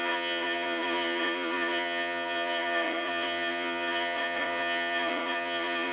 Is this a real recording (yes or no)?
no